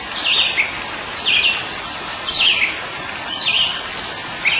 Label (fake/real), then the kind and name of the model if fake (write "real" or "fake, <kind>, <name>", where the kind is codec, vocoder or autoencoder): real